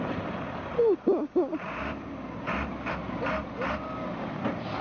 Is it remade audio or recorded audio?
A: recorded